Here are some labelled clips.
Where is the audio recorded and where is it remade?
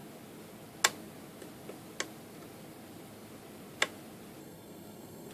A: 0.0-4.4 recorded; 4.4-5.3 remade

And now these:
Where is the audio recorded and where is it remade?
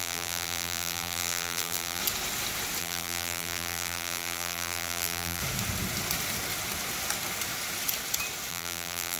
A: 0.0-2.0 remade; 2.0-2.8 recorded; 2.8-5.4 remade; 5.4-8.5 recorded; 8.5-9.2 remade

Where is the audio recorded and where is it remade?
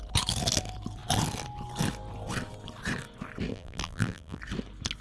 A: 0.0-3.5 recorded; 3.5-4.4 remade; 4.4-5.0 recorded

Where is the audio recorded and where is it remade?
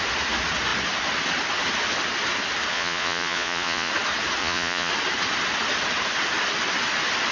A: 0.0-2.7 recorded; 2.7-3.9 remade; 3.9-4.4 recorded; 4.4-4.9 remade; 4.9-7.3 recorded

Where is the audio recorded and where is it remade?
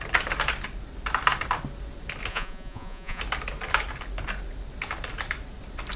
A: 0.0-2.3 recorded; 2.3-3.2 remade; 3.2-6.0 recorded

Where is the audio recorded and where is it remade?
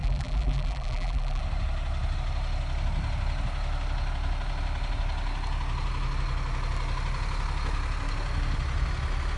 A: 0.0-1.4 remade; 1.4-9.4 recorded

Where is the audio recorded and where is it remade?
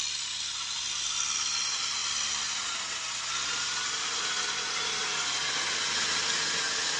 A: 0.0-7.0 recorded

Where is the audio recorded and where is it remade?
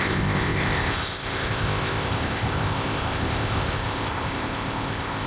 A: 0.0-5.3 remade